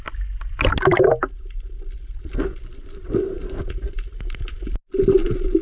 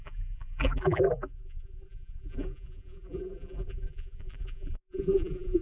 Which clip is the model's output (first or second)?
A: second